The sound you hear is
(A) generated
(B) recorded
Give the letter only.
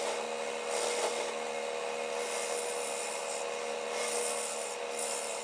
B